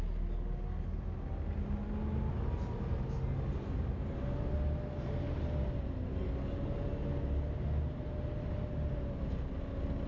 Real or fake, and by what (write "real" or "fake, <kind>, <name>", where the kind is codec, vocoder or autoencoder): real